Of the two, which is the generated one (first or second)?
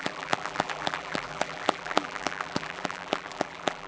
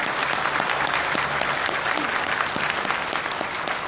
first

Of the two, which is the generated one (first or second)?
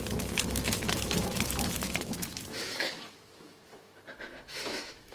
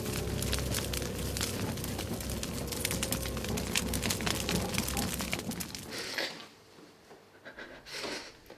first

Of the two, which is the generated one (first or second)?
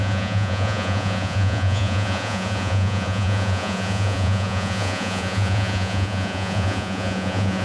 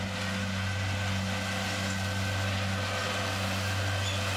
first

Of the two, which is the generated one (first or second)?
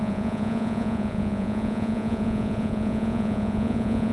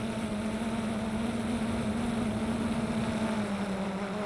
first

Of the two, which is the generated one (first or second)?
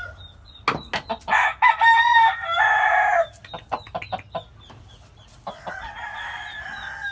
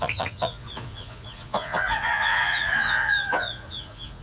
second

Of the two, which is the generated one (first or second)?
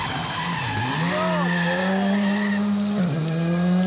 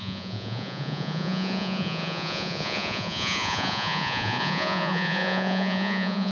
second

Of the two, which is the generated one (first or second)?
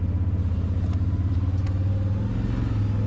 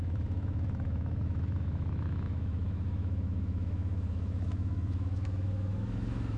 second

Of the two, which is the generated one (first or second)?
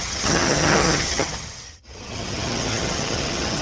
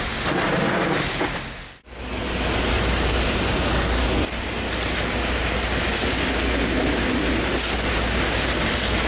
first